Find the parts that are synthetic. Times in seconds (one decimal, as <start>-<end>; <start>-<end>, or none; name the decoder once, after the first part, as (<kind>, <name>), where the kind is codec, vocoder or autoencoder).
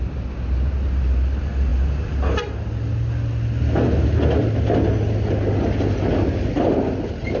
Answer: none